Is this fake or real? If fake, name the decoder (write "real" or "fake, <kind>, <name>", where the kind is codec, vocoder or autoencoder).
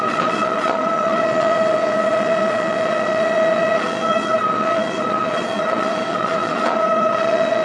fake, vocoder, Vocos